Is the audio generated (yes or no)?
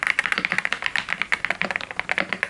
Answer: no